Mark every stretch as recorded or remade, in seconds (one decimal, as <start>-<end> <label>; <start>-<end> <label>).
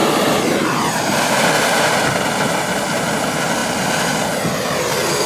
0.0-1.3 remade; 1.3-5.3 recorded